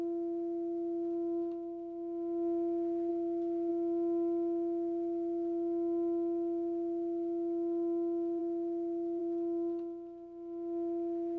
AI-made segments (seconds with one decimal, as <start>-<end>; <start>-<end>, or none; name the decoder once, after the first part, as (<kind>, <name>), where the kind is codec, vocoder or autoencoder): none